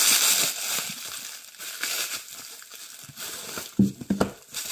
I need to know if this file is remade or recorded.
recorded